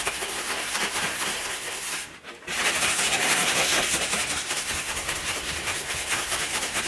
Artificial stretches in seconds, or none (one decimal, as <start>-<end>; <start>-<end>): 0.0-2.1; 2.8-6.9

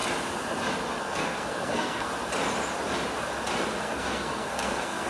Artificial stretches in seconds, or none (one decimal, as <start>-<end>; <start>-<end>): 1.0-2.1; 3.8-5.1

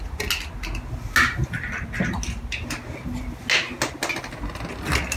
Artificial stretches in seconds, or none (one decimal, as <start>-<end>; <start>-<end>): none